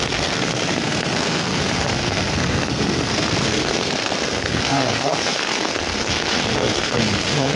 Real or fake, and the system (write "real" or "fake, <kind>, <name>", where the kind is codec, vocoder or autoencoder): fake, codec, SNAC